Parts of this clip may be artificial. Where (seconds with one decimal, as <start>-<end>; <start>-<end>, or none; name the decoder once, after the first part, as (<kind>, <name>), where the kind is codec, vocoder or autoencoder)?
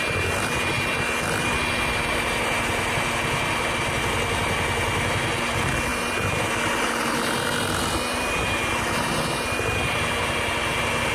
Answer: none